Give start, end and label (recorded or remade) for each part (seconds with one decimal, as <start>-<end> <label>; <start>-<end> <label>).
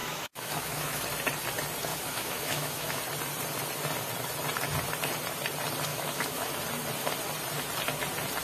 0.0-1.0 remade; 1.0-1.9 recorded; 1.9-3.0 remade; 3.0-5.9 recorded; 5.9-6.5 remade; 6.5-8.4 recorded